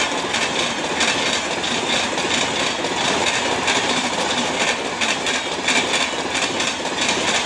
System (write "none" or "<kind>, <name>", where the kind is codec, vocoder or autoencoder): none